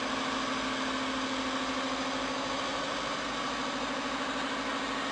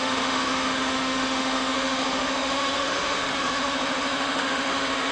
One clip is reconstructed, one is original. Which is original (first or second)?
first